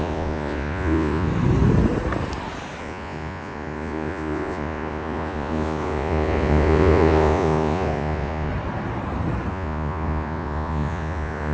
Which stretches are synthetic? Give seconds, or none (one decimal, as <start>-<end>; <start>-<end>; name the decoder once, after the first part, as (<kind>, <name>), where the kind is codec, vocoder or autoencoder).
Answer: 0.0-1.3 (vocoder, Vocos); 2.8-8.5; 9.5-11.5